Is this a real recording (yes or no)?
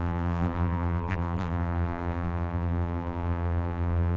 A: no